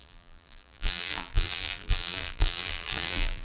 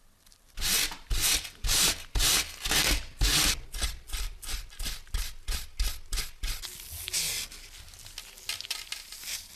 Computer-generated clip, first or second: first